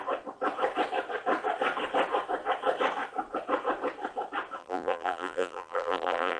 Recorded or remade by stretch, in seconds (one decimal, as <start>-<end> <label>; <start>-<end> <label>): 0.0-4.6 recorded; 4.6-6.4 remade